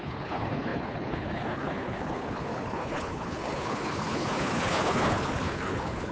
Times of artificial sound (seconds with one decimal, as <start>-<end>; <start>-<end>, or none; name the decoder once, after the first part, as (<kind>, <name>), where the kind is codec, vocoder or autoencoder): 0.0-6.1 (codec, HILCodec)